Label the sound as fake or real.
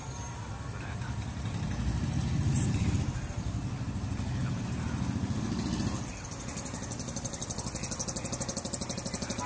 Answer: real